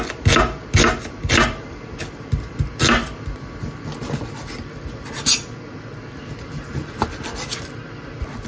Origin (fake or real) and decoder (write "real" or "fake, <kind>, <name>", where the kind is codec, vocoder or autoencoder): real